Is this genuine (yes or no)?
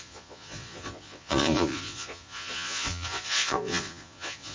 no